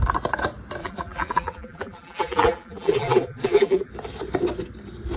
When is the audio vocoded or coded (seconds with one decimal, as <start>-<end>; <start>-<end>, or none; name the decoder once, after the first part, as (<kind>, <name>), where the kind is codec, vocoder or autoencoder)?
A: 0.8-3.9 (vocoder, BigVGAN v2)